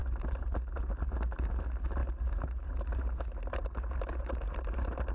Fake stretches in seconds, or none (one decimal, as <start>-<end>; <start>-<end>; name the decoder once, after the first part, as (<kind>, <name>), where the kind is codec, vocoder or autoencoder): none